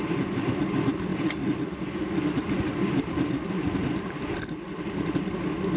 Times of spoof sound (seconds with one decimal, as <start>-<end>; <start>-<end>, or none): none